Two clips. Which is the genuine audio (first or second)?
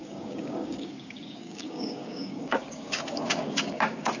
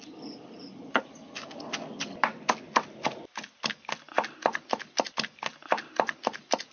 second